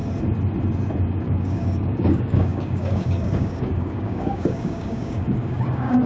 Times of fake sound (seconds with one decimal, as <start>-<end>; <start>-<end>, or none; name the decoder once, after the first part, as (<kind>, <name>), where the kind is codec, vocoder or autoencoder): 1.2-6.1 (codec, DAC)